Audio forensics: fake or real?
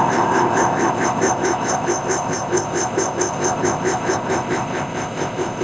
fake